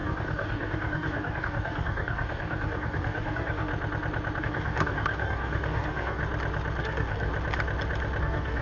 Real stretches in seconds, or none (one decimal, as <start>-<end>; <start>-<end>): 3.7-4.4; 6.2-6.8; 7.3-8.2